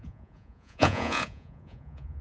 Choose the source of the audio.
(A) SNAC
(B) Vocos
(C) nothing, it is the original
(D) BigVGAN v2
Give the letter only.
B